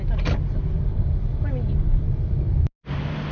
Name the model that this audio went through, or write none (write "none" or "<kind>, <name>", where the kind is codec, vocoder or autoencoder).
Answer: none